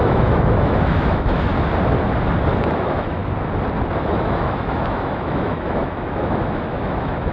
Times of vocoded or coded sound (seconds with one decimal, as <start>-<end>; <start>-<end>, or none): 0.0-1.5; 2.6-3.2; 4.0-7.3